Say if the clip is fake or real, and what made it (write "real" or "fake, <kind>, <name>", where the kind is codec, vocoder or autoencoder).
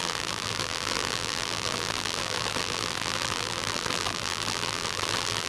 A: fake, vocoder, BigVGAN v2